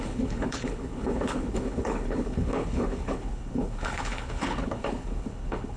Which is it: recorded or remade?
remade